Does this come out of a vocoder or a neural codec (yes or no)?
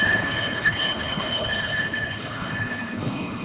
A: yes